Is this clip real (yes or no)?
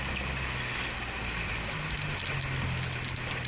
yes